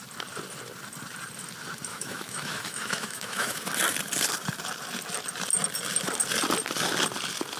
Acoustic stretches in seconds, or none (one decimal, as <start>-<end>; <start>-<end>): 0.0-1.9; 3.6-7.6